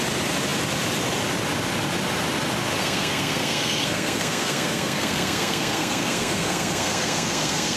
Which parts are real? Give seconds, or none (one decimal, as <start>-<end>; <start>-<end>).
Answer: 0.0-2.8